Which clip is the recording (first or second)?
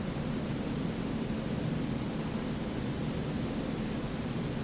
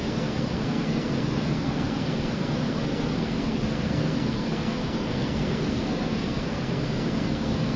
first